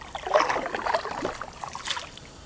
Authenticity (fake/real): real